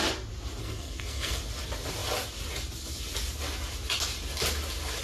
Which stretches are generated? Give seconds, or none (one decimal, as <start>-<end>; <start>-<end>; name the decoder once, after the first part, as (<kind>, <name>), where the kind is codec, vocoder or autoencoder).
0.6-1.4 (codec, SNAC)